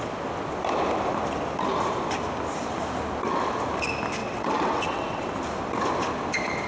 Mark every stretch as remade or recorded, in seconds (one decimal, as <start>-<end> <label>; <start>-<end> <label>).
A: 0.0-4.2 recorded; 4.2-5.2 remade; 5.2-6.7 recorded